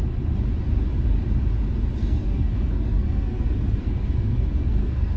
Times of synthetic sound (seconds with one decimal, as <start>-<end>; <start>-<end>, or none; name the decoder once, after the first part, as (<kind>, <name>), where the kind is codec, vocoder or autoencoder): 2.0-5.2 (codec, SNAC)